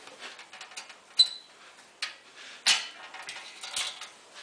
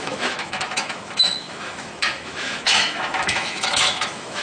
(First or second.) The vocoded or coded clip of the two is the second